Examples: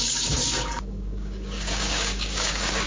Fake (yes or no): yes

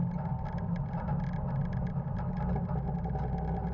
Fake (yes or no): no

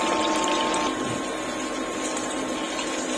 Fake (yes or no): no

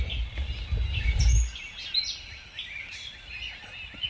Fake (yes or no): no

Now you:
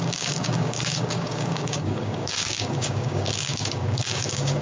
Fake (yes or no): yes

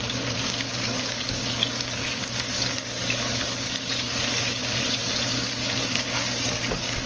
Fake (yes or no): yes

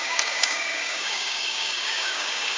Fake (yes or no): yes